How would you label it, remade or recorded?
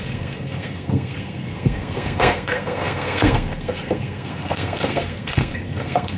remade